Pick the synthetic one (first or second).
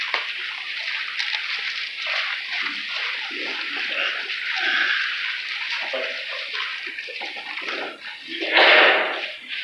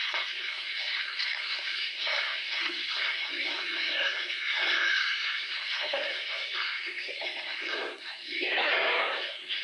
second